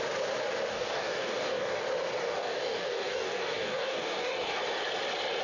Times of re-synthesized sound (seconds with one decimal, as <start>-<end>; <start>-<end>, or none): 0.7-1.8; 2.2-4.6